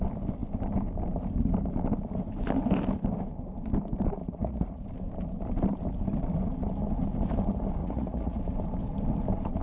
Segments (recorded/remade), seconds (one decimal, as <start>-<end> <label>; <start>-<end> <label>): 0.0-4.2 recorded; 4.2-4.8 remade; 4.8-7.8 recorded; 7.8-8.4 remade; 8.4-9.6 recorded